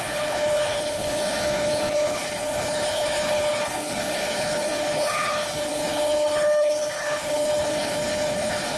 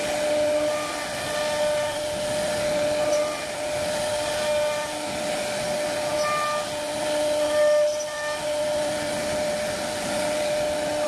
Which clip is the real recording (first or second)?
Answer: second